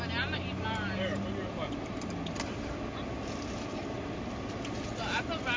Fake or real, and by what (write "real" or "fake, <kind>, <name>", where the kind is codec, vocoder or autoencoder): real